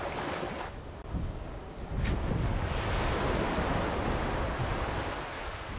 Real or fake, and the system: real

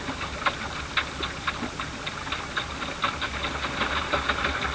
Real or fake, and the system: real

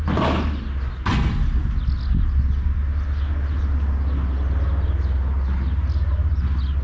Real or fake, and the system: real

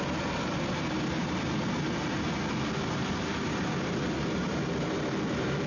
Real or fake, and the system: real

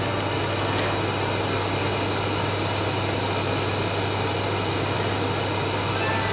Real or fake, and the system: real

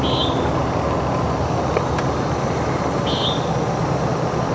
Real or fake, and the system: real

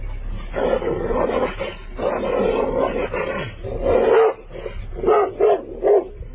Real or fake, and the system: real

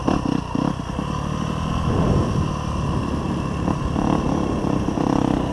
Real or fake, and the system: real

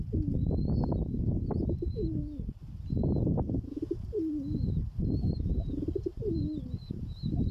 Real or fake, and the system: real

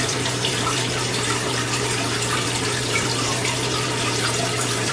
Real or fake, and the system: fake, vocoder, BigVGAN v2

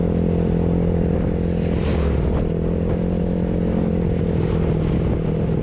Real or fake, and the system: real